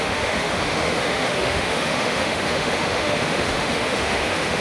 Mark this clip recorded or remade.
remade